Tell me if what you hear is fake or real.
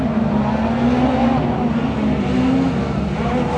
real